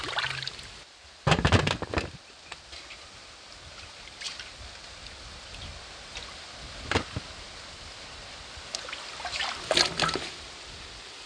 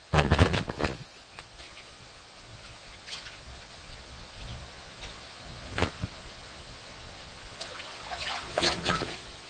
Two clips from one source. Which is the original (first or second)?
first